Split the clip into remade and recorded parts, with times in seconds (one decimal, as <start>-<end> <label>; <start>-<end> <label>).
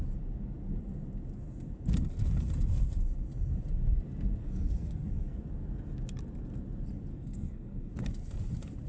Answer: 0.0-4.4 recorded; 4.4-5.4 remade; 5.4-7.1 recorded; 7.1-7.9 remade; 7.9-8.9 recorded